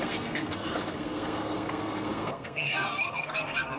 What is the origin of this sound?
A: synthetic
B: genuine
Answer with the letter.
A